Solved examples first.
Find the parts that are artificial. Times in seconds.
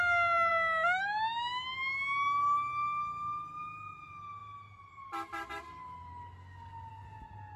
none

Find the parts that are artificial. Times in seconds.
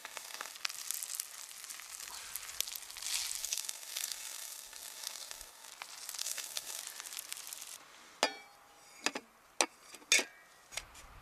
0.0-0.5; 3.4-5.7; 6.2-6.8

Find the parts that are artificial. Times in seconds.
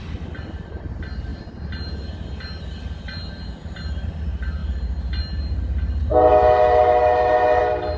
6.1-7.6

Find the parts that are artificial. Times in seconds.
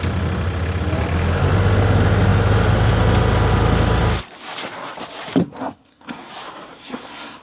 5.4-6.3; 6.7-7.4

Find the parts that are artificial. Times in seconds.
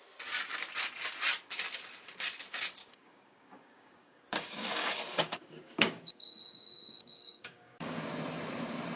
2.8-8.0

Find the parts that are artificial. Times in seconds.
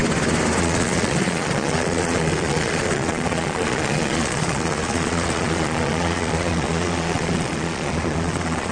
0.6-8.7